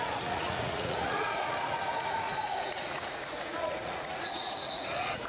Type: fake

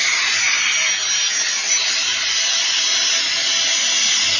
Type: real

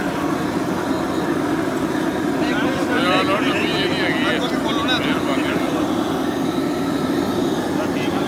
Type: real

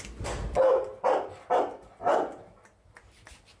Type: real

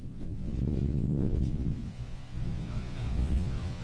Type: fake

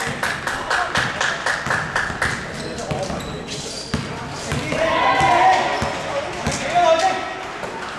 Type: real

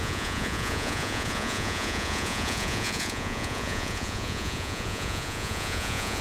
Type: fake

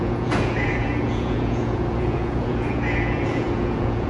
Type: fake